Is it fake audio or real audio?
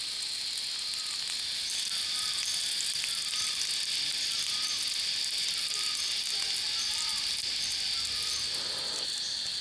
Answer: real